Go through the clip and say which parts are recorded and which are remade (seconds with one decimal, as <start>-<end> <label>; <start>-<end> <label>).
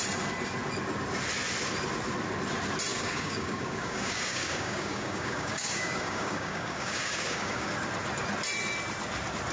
0.0-2.9 recorded; 2.9-7.7 remade; 7.7-9.5 recorded